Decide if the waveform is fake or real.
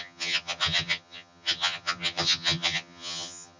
fake